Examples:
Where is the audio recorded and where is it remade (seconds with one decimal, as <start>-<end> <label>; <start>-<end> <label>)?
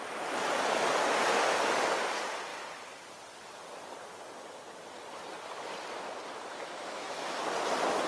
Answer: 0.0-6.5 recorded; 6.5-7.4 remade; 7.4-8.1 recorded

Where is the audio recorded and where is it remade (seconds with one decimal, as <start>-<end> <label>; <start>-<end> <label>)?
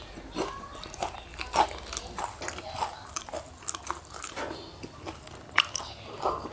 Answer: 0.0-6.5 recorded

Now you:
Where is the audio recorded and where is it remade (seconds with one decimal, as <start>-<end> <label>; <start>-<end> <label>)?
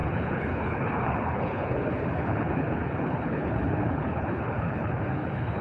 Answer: 0.0-5.6 remade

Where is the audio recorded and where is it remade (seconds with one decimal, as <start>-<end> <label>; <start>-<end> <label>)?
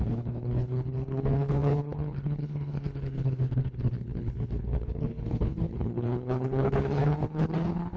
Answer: 0.0-8.0 remade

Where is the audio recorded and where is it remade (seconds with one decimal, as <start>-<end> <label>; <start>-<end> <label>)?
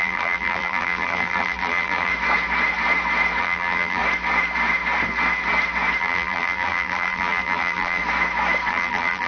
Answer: 0.0-2.1 remade; 2.1-3.4 recorded; 3.4-4.0 remade; 4.0-6.0 recorded; 6.0-8.0 remade; 8.0-8.7 recorded; 8.7-9.3 remade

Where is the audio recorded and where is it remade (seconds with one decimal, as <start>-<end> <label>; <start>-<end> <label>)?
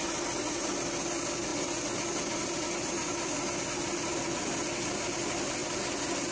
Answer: 0.0-6.3 recorded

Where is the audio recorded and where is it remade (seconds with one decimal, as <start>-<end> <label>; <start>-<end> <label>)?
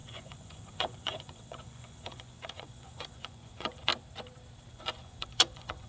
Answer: 0.0-3.9 remade; 3.9-4.7 recorded; 4.7-5.9 remade